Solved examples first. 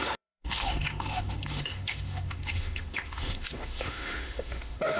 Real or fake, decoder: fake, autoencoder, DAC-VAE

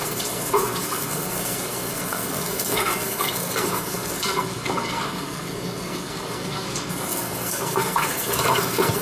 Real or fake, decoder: fake, codec, SNAC